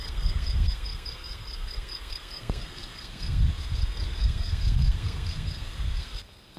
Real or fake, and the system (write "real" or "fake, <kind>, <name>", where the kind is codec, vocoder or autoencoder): fake, codec, SNAC